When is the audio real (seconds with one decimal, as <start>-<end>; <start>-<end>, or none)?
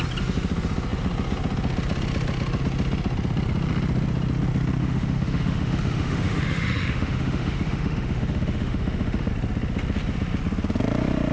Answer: 0.0-4.8; 9.3-11.3